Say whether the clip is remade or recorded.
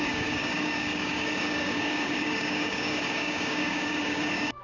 remade